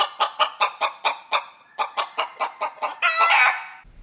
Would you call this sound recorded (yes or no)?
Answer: yes